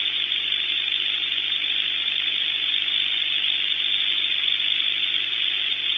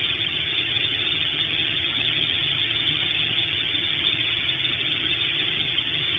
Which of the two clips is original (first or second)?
first